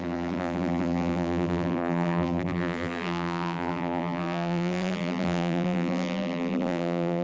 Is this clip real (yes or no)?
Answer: no